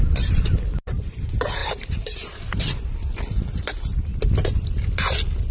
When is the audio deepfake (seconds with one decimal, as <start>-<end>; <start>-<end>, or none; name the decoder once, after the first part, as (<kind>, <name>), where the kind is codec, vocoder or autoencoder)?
0.7-1.2 (vocoder, BigVGAN v2); 1.6-2.6